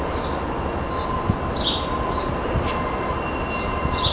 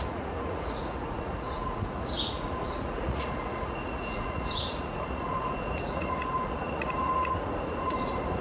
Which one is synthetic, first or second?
second